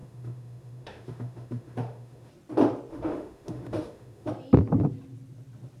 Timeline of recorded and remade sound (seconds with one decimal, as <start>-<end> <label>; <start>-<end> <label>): 0.0-2.3 remade; 2.3-2.9 recorded; 2.9-4.3 remade; 4.3-5.8 recorded